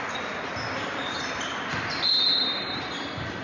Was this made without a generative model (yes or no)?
no